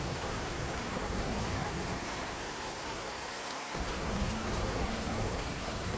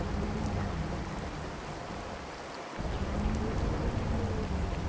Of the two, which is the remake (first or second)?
first